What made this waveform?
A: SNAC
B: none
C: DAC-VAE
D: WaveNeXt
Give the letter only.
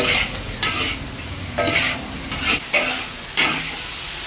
B